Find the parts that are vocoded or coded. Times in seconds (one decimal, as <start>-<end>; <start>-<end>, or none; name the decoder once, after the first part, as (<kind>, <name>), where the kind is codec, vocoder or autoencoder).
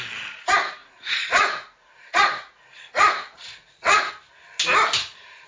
0.8-4.1 (vocoder, Vocos)